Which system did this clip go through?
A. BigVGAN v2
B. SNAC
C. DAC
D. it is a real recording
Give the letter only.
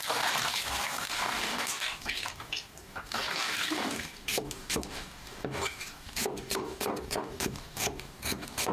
C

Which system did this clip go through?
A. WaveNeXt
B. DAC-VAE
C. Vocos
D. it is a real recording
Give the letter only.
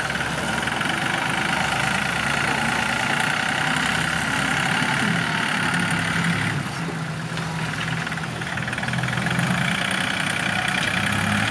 D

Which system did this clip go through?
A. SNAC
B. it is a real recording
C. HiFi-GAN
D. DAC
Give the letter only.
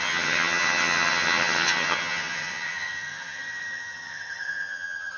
C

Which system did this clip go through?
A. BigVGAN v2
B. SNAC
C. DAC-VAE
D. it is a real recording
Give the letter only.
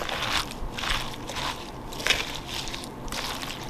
A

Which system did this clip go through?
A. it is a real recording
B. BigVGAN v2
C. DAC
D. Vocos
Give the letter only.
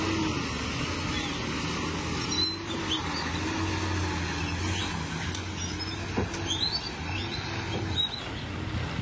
A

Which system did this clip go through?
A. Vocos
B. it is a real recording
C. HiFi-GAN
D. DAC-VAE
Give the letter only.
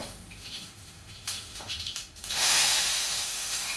D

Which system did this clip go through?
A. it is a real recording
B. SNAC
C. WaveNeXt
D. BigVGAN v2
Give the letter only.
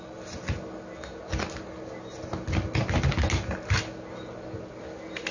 A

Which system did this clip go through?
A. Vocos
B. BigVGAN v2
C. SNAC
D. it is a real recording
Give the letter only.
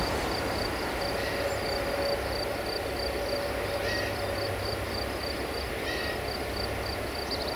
D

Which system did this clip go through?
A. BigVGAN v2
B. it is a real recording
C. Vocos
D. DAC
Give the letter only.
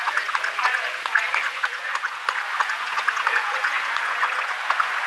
C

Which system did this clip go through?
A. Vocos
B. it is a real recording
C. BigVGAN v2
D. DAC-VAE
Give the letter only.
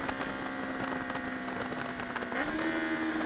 B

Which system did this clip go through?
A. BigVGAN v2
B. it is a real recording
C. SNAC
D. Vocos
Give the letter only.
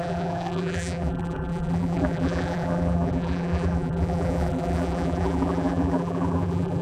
A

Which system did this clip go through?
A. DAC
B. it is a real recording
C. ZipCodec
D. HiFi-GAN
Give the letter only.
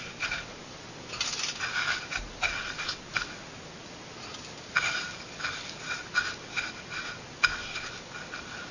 B